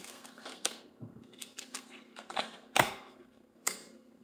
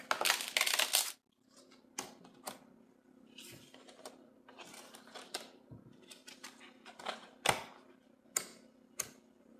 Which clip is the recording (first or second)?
second